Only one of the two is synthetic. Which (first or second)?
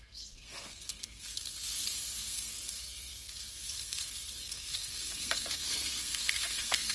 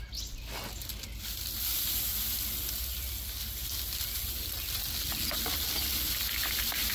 first